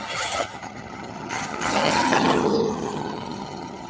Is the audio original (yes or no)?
no